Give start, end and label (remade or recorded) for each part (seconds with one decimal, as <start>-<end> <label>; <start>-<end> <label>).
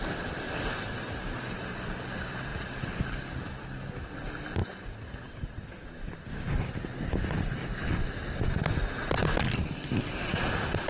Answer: 0.0-2.5 remade; 2.5-4.1 recorded; 4.1-7.8 remade; 7.8-10.4 recorded; 10.4-10.9 remade